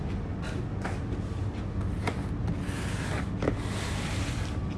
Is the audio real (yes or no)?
yes